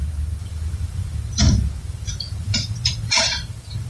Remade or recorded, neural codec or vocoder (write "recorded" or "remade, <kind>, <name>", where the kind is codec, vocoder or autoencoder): remade, vocoder, BigVGAN v2